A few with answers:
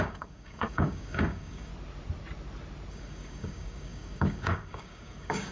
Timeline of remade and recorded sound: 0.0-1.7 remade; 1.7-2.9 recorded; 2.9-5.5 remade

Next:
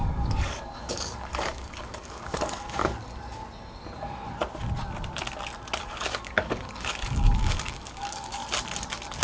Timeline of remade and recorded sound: 0.0-2.8 remade; 2.8-5.8 recorded; 5.8-8.4 remade; 8.4-9.2 recorded